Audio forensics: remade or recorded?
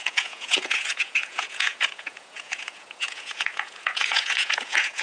remade